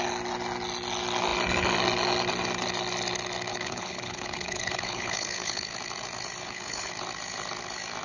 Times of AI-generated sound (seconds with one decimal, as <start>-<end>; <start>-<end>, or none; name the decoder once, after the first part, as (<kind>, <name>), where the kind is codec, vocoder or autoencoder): 3.5-5.7 (codec, HILCodec); 6.4-6.9